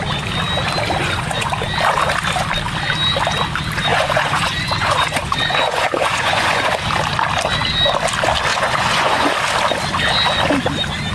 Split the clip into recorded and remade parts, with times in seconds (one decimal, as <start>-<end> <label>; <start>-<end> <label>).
0.0-1.0 recorded; 1.0-1.5 remade; 1.5-3.9 recorded; 3.9-6.7 remade; 6.7-8.5 recorded; 8.5-9.3 remade; 9.3-11.1 recorded

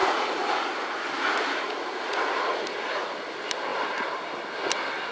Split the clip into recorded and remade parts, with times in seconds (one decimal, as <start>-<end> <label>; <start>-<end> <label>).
0.0-3.1 remade; 3.1-5.1 recorded

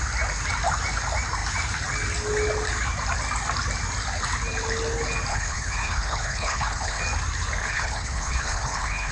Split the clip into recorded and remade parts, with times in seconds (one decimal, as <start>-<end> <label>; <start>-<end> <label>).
0.0-5.3 recorded; 5.3-7.0 remade; 7.0-7.6 recorded; 7.6-9.1 remade

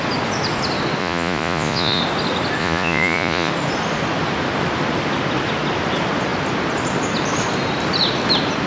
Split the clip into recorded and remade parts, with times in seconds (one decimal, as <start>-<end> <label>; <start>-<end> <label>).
0.0-1.0 recorded; 1.0-2.0 remade; 2.0-2.6 recorded; 2.6-3.5 remade; 3.5-8.7 recorded